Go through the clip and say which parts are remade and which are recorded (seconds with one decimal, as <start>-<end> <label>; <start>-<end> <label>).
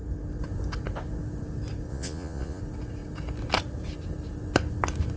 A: 0.0-1.9 recorded; 1.9-2.6 remade; 2.6-5.2 recorded